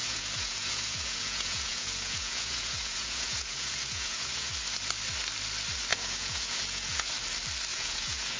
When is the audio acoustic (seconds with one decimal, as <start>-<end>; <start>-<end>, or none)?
4.5-5.9; 7.1-7.7